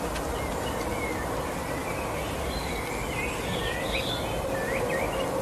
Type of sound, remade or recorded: recorded